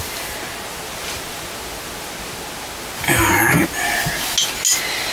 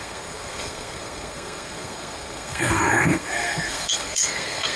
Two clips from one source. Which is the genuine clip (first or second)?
first